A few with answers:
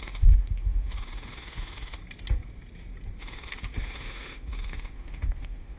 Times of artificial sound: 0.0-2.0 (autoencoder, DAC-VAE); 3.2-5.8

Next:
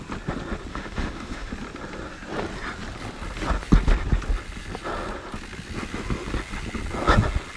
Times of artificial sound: 0.7-1.5 (autoencoder, DAC-VAE)

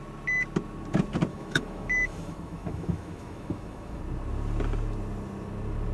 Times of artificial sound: 1.3-4.0 (autoencoder, DAC-VAE)

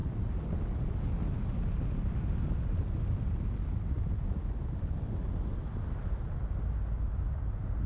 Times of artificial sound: none

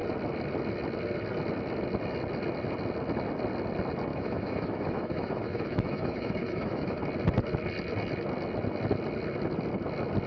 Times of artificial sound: 4.1-7.0 (autoencoder, DAC-VAE)